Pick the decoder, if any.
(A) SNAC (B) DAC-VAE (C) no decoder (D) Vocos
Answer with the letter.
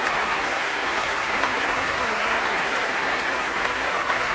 A